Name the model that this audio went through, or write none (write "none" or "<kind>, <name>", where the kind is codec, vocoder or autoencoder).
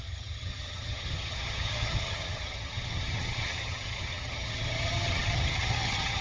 vocoder, HiFi-GAN